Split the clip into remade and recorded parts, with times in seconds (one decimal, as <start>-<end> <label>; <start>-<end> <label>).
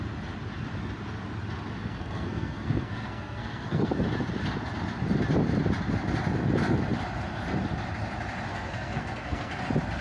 0.0-1.8 recorded; 1.8-4.0 remade; 4.0-8.5 recorded; 8.5-9.6 remade; 9.6-10.0 recorded